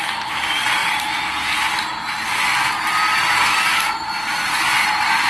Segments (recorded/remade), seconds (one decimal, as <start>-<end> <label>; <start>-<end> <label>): 0.0-5.3 recorded